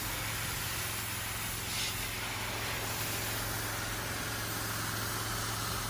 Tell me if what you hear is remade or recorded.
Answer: recorded